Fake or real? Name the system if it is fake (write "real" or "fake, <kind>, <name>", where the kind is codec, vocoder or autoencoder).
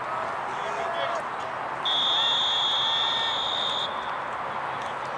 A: real